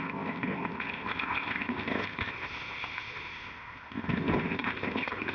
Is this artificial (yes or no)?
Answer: yes